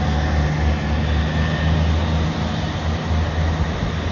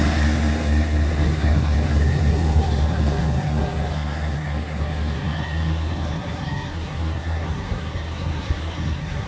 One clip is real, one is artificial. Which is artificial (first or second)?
second